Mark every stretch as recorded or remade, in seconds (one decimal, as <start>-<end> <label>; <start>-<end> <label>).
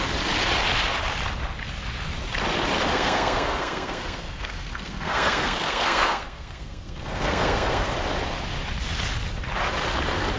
0.0-2.9 recorded; 2.9-7.9 remade; 7.9-10.4 recorded